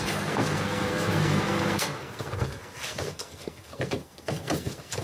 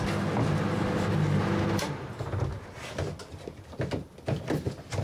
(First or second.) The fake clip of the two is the first